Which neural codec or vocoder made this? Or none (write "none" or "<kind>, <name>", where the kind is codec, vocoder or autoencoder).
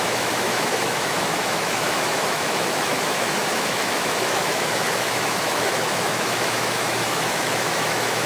autoencoder, DAC-VAE